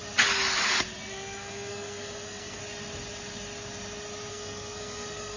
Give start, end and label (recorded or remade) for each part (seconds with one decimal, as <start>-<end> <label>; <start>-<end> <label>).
0.0-1.1 recorded; 1.1-2.6 remade; 2.6-4.3 recorded; 4.3-5.4 remade